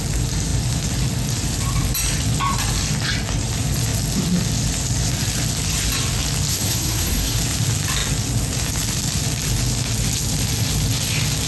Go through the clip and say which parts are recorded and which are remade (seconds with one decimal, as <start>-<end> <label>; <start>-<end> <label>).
0.0-6.5 recorded; 6.5-7.4 remade; 7.4-11.5 recorded